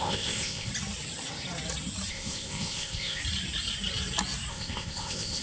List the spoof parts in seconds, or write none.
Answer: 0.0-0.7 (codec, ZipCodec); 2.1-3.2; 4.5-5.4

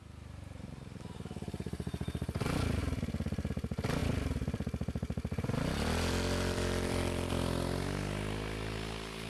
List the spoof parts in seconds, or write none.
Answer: 2.8-3.5 (vocoder, BigVGAN v2); 4.0-7.3

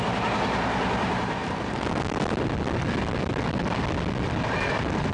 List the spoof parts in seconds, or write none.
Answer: none

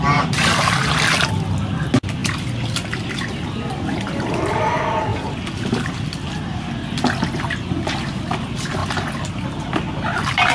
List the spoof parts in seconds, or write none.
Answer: none